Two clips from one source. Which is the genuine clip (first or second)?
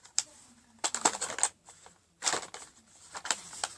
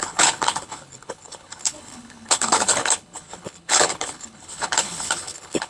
first